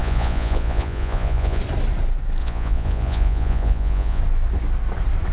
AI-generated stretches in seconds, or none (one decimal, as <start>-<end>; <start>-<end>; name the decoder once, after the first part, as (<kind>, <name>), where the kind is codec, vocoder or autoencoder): 0.0-1.6 (vocoder, Vocos); 2.4-4.2